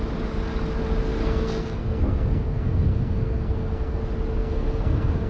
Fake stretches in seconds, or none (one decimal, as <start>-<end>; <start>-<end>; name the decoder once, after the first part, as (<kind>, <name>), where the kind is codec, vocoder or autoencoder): 1.1-4.0 (codec, SNAC); 4.4-5.3